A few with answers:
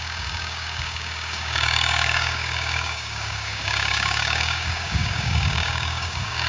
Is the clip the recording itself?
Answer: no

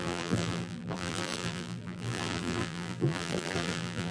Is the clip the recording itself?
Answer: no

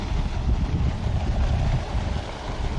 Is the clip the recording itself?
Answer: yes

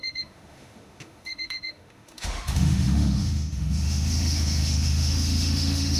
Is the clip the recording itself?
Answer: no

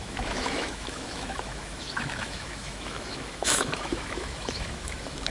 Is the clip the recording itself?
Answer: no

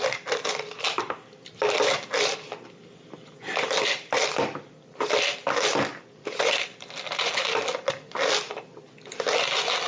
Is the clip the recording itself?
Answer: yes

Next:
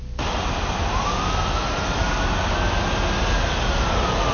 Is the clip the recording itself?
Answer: yes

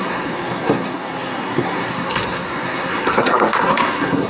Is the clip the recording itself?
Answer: no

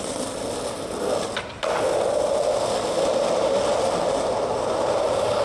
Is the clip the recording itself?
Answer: yes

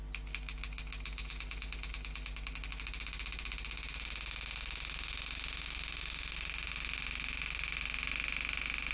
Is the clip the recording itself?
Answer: yes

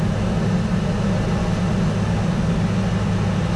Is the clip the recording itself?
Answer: yes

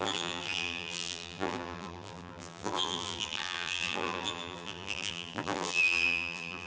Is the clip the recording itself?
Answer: no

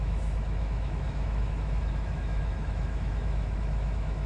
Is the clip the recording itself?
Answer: no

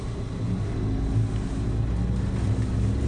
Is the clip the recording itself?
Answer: yes